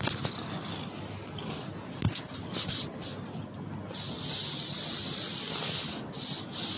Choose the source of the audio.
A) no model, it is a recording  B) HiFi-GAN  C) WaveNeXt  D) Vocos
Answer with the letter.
A